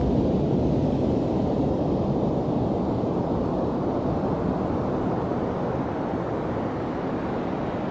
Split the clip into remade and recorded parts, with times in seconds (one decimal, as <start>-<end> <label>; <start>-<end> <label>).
0.0-1.4 recorded; 1.4-4.3 remade; 4.3-7.9 recorded